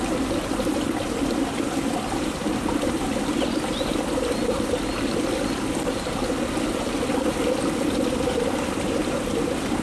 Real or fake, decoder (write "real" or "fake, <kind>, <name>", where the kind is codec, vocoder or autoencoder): real